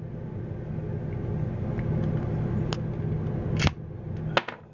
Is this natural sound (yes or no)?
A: yes